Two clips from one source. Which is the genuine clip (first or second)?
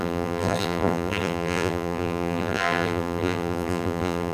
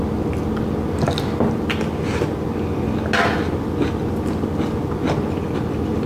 second